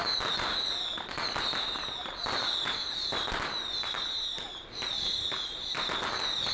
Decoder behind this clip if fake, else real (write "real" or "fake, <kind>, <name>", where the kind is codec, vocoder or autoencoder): real